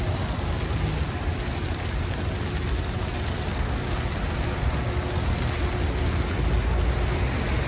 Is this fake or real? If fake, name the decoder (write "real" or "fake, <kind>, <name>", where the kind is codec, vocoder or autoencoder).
real